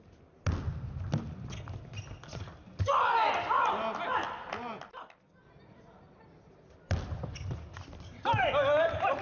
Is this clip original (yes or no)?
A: yes